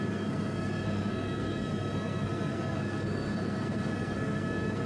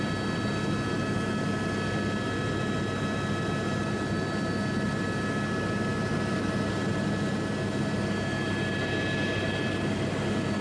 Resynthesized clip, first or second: first